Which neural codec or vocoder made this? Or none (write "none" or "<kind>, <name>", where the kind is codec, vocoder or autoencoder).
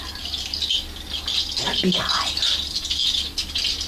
none